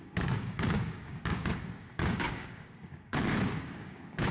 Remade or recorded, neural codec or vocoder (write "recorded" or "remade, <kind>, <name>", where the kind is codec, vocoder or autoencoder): remade, codec, DAC